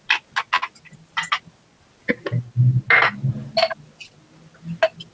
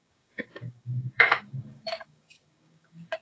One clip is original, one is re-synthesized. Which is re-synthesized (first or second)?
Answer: second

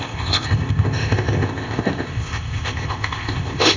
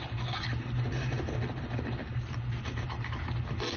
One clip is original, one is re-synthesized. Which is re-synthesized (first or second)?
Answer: first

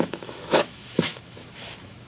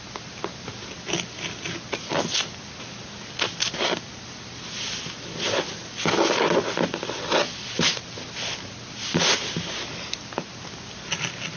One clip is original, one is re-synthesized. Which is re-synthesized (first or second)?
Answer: first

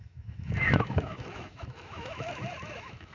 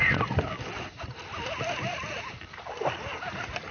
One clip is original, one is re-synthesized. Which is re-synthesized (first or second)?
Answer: first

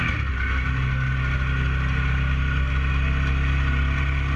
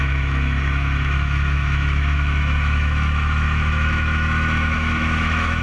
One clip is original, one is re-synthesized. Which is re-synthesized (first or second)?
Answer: second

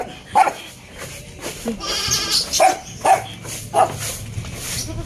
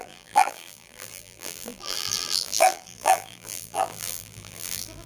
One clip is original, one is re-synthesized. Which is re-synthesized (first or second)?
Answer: second